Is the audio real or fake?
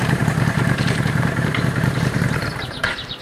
fake